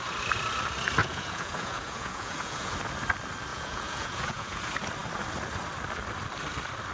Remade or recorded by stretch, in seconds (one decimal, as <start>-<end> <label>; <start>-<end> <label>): 0.0-1.0 recorded; 1.0-2.7 remade; 2.7-3.5 recorded; 3.5-4.6 remade; 4.6-6.9 recorded